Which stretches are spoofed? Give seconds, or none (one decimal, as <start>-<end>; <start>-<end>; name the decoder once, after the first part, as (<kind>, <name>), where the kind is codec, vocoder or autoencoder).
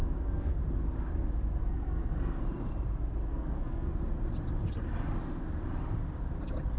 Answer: 0.0-0.6 (codec, SNAC); 1.6-2.4; 3.3-3.9